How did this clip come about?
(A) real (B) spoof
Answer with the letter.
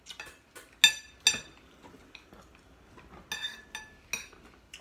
A